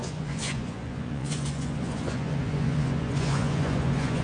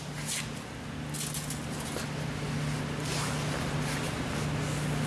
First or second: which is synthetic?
first